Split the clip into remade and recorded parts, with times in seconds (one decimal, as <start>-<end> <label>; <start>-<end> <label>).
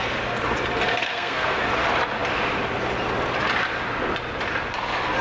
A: 0.0-0.9 recorded; 0.9-1.6 remade; 1.6-5.2 recorded